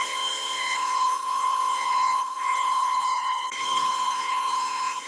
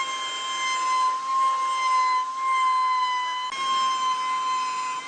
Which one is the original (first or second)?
second